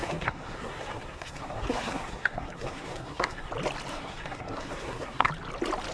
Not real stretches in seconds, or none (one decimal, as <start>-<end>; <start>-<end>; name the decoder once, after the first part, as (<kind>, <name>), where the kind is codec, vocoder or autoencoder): 0.0-3.5 (codec, SNAC); 3.9-5.3